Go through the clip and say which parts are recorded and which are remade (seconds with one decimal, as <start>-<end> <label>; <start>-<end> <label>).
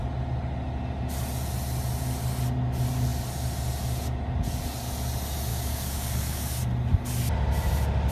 0.0-5.5 recorded; 5.5-6.6 remade; 6.6-8.1 recorded